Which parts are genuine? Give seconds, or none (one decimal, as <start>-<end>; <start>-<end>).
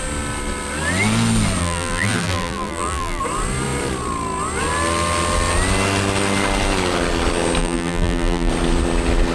0.0-1.6; 3.2-7.6; 8.5-9.3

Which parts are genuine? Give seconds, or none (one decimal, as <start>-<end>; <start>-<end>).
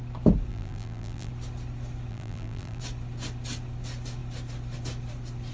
0.0-0.5; 1.3-2.1; 2.8-5.5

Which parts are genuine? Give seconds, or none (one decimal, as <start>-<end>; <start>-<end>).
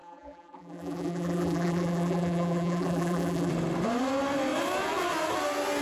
3.5-5.8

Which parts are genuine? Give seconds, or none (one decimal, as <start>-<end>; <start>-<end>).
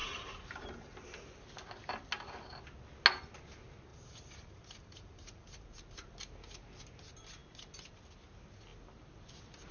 1.0-3.9; 5.9-9.7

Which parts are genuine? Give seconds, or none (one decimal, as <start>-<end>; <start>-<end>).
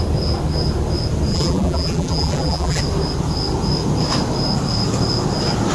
0.0-1.3; 2.8-5.7